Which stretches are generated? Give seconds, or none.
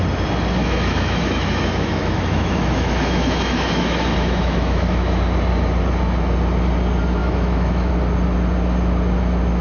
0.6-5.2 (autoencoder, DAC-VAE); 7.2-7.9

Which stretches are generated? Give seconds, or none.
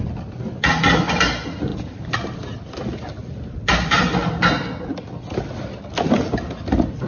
1.7-2.8 (vocoder, BigVGAN v2); 3.2-4.0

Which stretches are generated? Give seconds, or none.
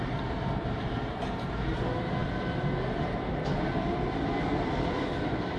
none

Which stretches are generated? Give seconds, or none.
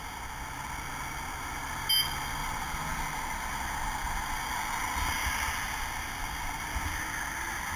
none